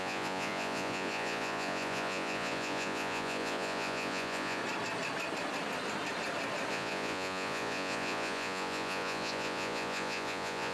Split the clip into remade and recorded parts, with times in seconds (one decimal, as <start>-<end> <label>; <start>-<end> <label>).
0.0-4.6 remade; 4.6-6.7 recorded; 6.7-10.7 remade